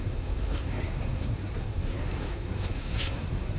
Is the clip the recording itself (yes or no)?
no